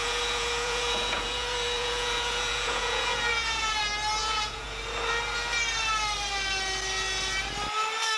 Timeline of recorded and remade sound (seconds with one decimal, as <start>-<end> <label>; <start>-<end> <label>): 0.0-3.8 remade; 3.8-4.2 recorded; 4.2-4.8 remade; 4.8-8.2 recorded